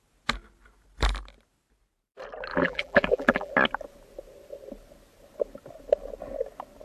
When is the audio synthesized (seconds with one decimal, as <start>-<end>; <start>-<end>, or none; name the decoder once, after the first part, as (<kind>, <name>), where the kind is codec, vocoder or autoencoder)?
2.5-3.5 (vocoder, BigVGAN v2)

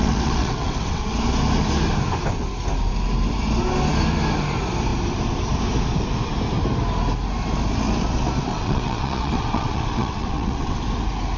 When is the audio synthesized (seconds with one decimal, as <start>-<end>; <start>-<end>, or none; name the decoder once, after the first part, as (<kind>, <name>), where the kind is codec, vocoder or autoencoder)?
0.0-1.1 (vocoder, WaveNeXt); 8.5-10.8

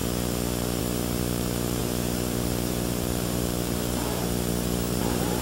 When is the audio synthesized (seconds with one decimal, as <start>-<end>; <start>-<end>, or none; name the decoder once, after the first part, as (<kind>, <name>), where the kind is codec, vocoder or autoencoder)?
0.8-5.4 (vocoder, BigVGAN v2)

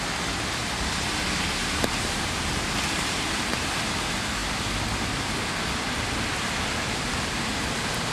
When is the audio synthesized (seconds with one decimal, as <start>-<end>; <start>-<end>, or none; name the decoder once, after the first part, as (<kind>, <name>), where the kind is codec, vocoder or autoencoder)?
1.6-3.4 (vocoder, BigVGAN v2)

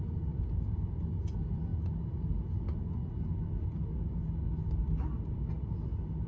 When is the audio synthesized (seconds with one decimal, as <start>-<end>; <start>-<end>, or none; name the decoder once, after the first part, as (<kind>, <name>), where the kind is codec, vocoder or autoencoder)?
none

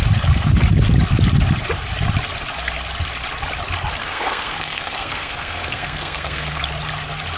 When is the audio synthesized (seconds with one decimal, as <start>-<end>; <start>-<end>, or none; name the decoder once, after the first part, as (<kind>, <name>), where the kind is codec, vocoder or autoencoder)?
4.0-6.6 (codec, SNAC)